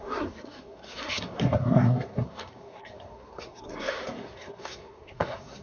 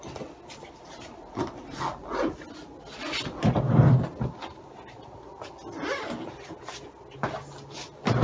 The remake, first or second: first